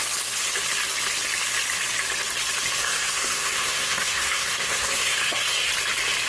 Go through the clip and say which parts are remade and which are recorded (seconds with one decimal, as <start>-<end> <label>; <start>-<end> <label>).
0.0-2.8 recorded; 2.8-5.7 remade; 5.7-6.3 recorded